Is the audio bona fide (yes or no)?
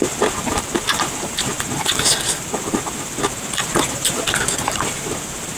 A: no